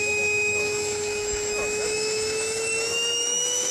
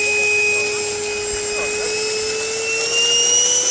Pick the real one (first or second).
second